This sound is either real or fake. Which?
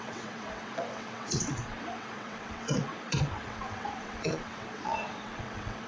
fake